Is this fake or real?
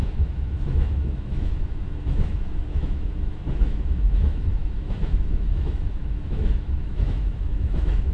fake